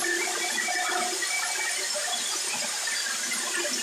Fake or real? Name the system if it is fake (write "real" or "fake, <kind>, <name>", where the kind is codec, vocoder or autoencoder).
real